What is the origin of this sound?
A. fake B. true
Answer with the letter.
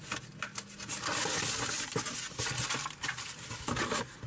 B